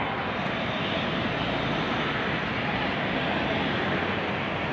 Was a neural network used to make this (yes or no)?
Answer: no